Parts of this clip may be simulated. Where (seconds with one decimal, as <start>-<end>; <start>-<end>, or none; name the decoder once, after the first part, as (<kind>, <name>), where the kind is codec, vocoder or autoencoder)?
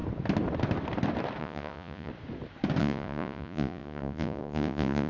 1.4-2.1 (vocoder, Vocos); 2.8-5.1